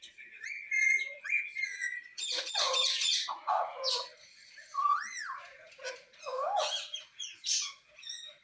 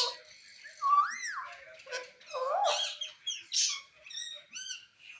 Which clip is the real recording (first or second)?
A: second